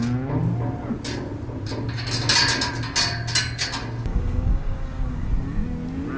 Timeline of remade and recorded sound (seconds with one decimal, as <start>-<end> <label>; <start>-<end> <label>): 0.0-4.1 recorded; 4.1-5.3 remade; 5.3-6.2 recorded